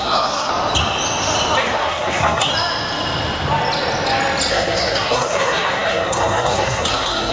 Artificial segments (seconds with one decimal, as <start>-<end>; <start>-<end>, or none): 0.0-0.5; 1.6-2.5; 4.5-7.3